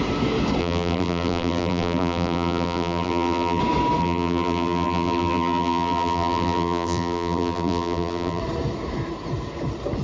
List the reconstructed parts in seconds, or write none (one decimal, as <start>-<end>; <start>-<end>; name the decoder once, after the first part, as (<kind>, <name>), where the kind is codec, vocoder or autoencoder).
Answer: 0.6-3.6 (vocoder, BigVGAN v2); 4.0-8.4